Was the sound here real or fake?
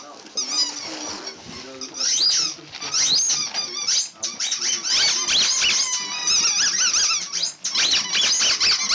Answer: real